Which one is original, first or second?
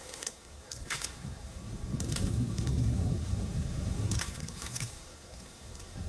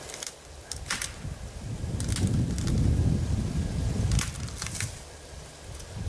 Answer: second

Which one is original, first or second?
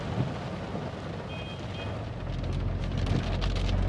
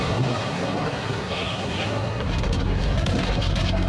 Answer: first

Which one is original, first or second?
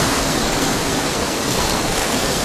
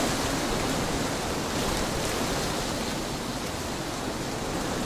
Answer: second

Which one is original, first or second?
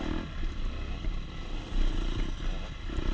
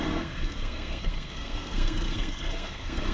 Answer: first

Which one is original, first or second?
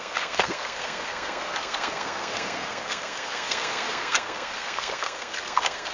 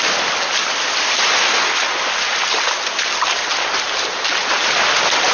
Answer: second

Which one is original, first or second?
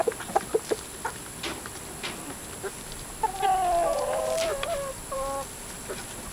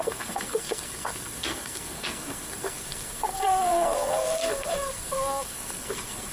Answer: first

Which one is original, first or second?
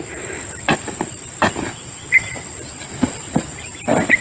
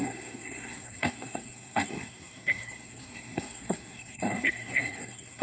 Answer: first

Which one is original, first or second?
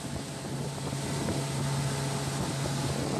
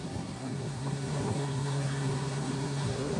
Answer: first